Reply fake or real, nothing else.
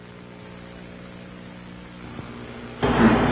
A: real